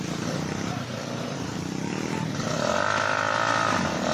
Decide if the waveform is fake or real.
real